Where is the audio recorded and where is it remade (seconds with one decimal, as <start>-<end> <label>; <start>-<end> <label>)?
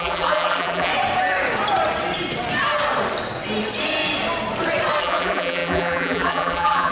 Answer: 0.0-0.9 remade; 0.9-5.0 recorded; 5.0-6.9 remade